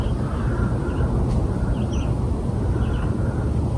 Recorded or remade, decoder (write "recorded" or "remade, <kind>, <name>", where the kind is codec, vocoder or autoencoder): recorded